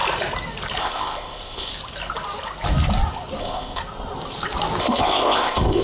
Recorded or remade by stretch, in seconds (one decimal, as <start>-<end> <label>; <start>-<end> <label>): 0.0-0.8 recorded; 0.8-1.7 remade; 1.7-3.4 recorded; 3.4-3.8 remade; 3.8-4.8 recorded; 4.8-5.8 remade